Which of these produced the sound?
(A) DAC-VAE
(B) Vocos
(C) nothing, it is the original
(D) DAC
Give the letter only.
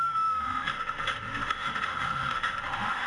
A